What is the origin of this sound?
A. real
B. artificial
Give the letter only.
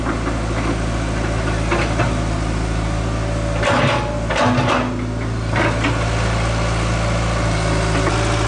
A